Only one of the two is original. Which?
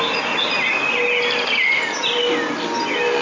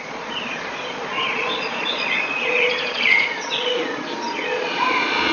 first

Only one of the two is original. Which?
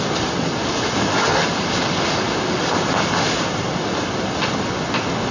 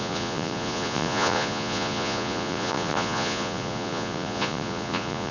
first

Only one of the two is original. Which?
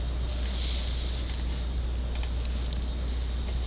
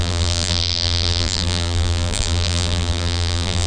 first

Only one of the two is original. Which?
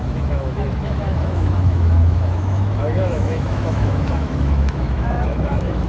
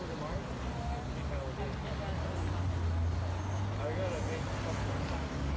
second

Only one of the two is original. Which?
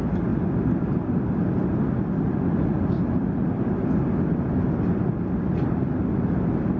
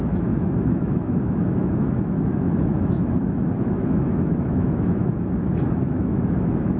first